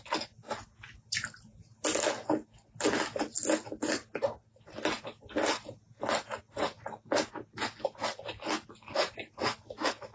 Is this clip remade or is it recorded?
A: recorded